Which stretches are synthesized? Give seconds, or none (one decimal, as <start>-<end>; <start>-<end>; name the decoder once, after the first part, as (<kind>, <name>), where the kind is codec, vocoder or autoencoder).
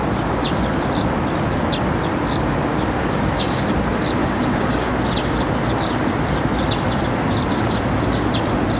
3.0-3.6 (codec, DAC); 4.2-4.9